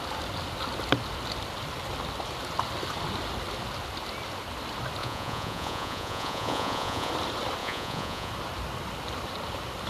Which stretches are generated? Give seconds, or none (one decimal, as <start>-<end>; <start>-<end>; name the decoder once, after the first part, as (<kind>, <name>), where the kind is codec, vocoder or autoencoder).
5.0-7.1 (vocoder, Vocos); 7.6-8.3